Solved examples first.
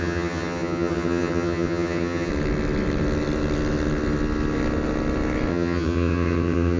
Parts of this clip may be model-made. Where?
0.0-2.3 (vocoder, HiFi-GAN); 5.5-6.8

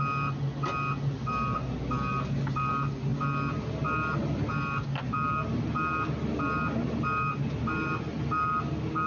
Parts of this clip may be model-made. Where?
none

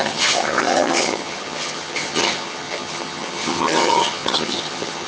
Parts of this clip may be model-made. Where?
0.0-5.1 (vocoder, HiFi-GAN)

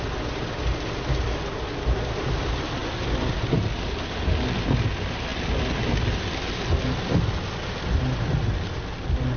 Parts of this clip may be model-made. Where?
none

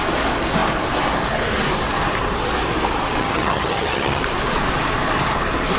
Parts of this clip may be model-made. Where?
3.2-4.2 (vocoder, HiFi-GAN)